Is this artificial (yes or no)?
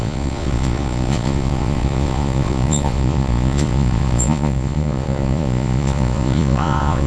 yes